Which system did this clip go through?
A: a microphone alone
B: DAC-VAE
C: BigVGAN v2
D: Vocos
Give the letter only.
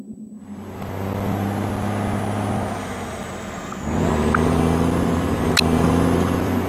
A